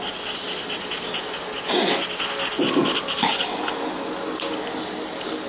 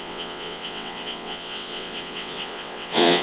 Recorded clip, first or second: first